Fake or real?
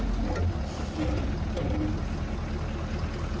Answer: real